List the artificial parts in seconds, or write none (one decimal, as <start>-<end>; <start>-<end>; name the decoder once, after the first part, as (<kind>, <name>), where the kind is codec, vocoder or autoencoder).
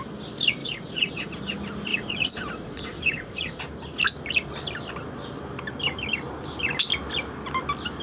0.6-1.4 (vocoder, Vocos); 1.9-3.6